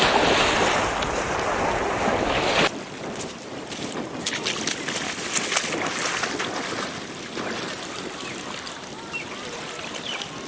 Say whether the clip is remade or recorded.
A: recorded